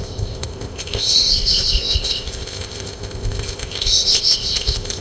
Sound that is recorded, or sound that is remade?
remade